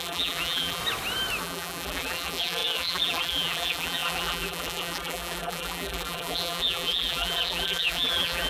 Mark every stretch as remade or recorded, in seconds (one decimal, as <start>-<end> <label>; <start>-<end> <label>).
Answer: 0.0-0.8 remade; 0.8-1.4 recorded; 1.4-8.5 remade